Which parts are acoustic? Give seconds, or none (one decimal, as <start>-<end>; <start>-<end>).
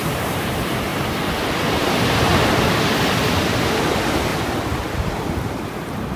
2.3-3.6; 4.3-5.3